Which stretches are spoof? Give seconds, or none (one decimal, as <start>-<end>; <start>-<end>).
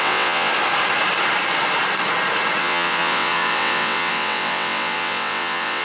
0.0-0.5; 2.6-5.8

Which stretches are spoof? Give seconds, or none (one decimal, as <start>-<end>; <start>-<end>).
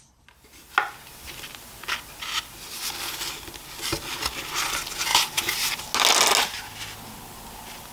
none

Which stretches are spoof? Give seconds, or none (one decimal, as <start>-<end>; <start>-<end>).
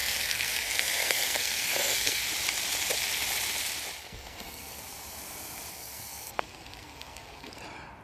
0.0-2.2; 4.0-4.8; 5.7-7.6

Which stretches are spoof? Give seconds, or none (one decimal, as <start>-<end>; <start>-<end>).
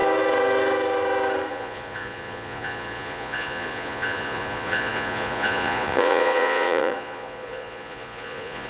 1.5-8.7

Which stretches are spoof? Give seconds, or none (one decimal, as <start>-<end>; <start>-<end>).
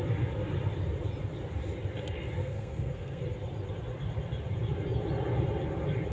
2.4-3.2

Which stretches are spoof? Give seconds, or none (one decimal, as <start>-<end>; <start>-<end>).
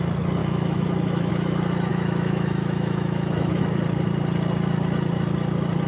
0.4-1.3; 1.9-3.6